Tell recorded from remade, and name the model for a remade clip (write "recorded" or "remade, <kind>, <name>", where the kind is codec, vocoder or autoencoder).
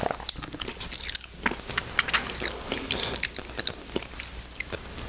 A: recorded